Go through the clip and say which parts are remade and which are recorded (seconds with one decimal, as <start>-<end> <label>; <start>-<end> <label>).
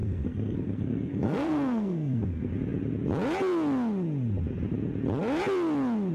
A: 0.0-2.5 remade; 2.5-6.1 recorded